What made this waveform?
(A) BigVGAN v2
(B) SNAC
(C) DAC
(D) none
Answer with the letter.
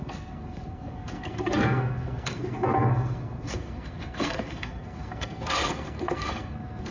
B